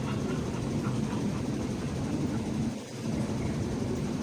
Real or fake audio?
fake